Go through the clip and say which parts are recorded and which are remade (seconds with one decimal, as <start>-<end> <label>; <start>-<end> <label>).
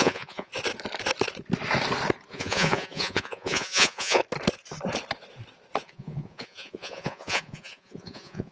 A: 0.0-0.5 remade; 0.5-2.3 recorded; 2.3-4.2 remade; 4.2-5.8 recorded; 5.8-8.5 remade